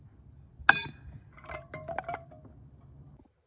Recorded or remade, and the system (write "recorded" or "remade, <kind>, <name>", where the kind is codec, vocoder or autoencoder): recorded